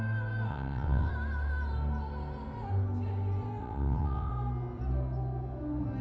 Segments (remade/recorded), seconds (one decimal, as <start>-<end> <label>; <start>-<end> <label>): 0.0-0.5 recorded; 0.5-1.1 remade; 1.1-3.6 recorded; 3.6-4.3 remade; 4.3-6.0 recorded